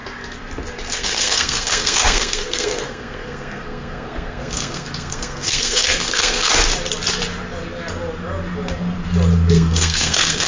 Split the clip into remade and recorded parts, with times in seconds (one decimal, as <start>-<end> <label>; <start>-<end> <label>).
0.0-0.9 recorded; 0.9-6.5 remade; 6.5-9.5 recorded; 9.5-10.5 remade